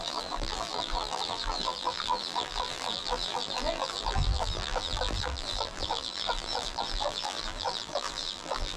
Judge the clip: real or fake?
fake